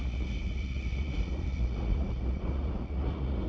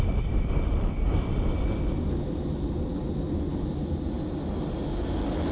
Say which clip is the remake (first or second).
first